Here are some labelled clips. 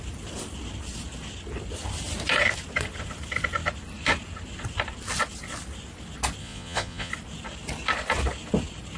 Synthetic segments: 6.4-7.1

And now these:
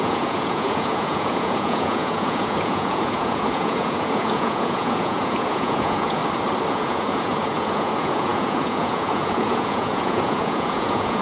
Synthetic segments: 0.0-6.2; 6.7-11.2

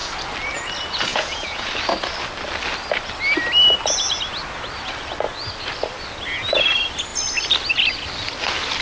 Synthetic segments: 1.1-1.7

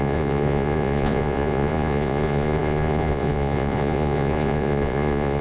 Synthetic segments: 0.0-5.4

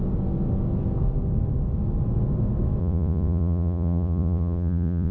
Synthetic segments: 2.8-5.1

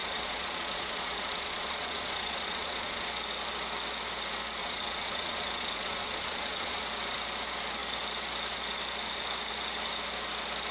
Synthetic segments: 0.0-3.1; 4.6-6.8

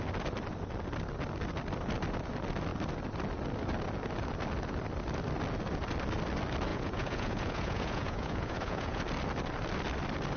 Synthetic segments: 6.7-9.0

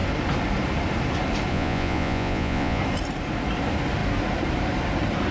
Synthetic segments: 1.5-2.8